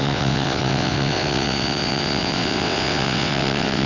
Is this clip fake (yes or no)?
yes